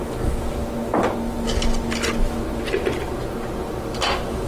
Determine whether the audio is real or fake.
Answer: real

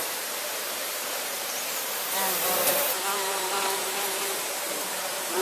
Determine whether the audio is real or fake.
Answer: fake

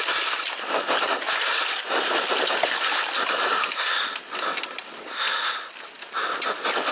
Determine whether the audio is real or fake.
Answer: real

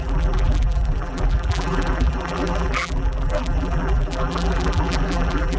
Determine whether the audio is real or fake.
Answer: fake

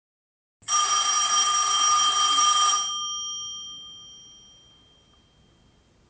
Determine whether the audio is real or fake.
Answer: real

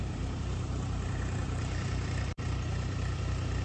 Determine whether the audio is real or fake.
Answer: fake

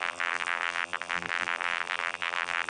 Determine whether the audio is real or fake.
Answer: fake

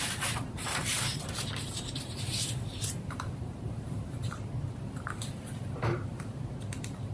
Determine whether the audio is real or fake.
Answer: fake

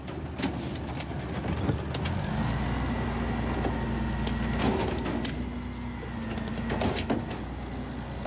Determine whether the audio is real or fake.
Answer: real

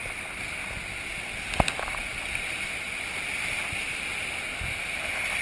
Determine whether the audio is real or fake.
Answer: real